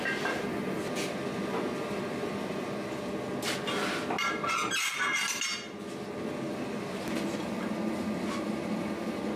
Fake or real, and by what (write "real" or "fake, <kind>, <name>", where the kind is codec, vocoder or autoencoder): real